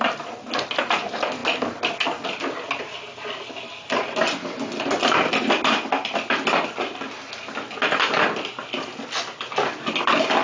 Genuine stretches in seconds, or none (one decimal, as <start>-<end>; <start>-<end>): 0.0-10.4

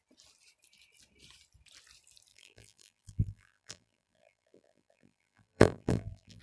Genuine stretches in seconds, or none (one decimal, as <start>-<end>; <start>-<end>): 0.0-2.3

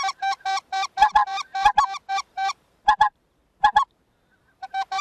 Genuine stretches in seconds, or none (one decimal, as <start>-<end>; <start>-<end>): 1.2-2.1; 3.4-4.4

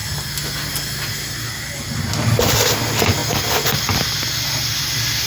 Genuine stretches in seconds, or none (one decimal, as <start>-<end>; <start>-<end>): 0.0-5.3

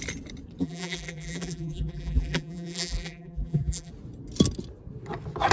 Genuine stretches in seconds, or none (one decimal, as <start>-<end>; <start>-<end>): 0.0-0.6; 3.9-5.5

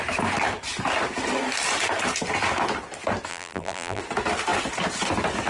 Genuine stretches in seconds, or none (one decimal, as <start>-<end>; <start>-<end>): 0.0-3.3; 4.0-5.5

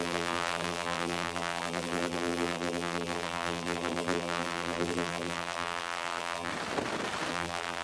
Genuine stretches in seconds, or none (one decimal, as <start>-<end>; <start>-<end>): 6.5-7.3

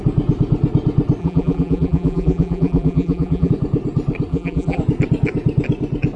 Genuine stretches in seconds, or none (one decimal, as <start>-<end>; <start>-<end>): 0.0-1.2; 3.5-4.3; 4.8-6.2